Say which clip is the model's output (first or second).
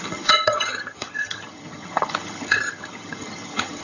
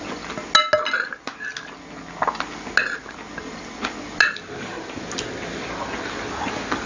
first